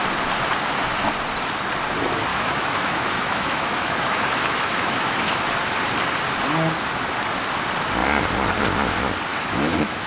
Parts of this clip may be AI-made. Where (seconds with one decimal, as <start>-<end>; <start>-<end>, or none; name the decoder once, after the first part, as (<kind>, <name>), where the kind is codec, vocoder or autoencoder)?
2.3-5.5 (autoencoder, DAC-VAE); 9.3-10.1